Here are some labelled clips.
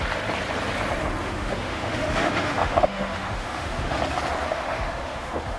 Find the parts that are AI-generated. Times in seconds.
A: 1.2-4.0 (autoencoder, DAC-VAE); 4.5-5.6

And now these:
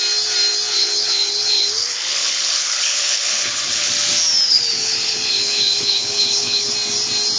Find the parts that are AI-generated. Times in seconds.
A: 0.7-3.9 (codec, HILCodec); 4.5-6.7